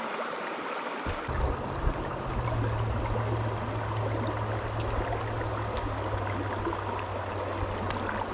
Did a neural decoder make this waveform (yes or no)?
no